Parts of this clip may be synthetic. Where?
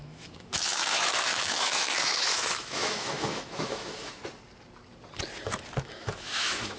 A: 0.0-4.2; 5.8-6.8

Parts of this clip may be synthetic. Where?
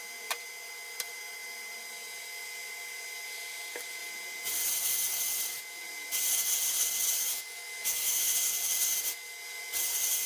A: 7.3-8.2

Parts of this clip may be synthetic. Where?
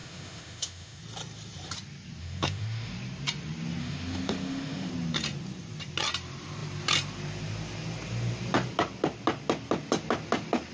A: 0.0-1.0; 2.2-2.9; 3.8-4.9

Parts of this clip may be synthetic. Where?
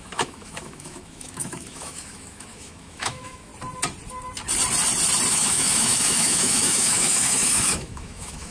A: 0.0-3.5; 5.3-8.5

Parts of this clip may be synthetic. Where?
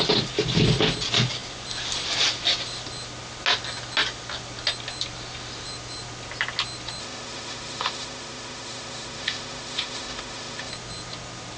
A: 7.0-10.7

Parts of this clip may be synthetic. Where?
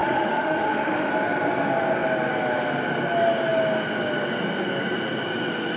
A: 0.0-1.1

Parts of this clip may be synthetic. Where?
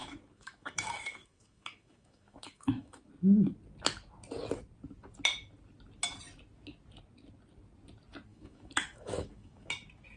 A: 0.0-3.1; 8.3-9.7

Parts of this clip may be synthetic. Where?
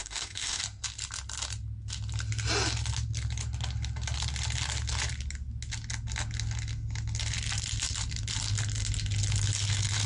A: 0.0-0.6